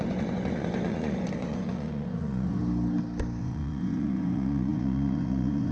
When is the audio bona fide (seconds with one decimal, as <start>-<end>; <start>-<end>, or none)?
2.6-3.4